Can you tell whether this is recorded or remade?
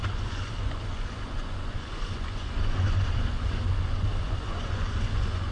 remade